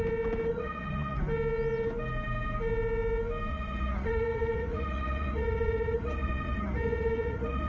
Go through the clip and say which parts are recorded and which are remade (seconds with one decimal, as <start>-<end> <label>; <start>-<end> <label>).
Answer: 0.0-0.5 recorded; 0.5-1.2 remade; 1.2-3.5 recorded; 3.5-7.7 remade